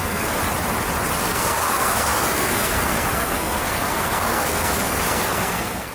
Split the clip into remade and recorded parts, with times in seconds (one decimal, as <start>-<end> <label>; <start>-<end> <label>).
0.0-0.4 remade; 0.4-1.2 recorded; 1.2-5.9 remade